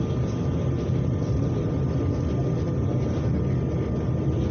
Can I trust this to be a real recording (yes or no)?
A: yes